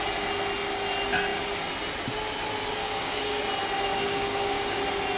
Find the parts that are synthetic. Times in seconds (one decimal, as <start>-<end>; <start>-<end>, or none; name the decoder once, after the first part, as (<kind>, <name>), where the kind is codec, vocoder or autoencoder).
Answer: 2.7-3.4 (codec, DAC); 3.9-4.8